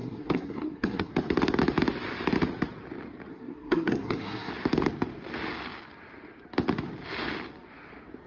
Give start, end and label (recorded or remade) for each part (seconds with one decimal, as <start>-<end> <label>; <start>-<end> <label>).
0.0-1.1 remade; 1.1-3.3 recorded; 3.3-4.5 remade; 4.5-8.3 recorded